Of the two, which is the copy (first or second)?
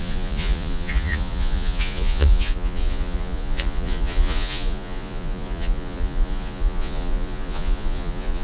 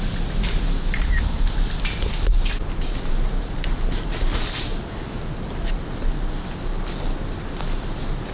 first